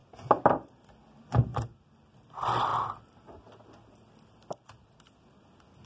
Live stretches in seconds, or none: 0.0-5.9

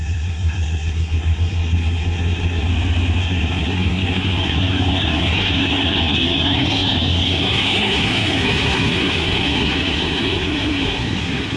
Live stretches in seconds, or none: 2.7-3.2

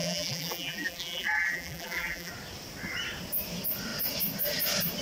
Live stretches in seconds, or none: 2.3-5.0